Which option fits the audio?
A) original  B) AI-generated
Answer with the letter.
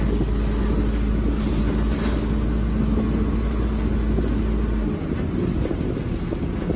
A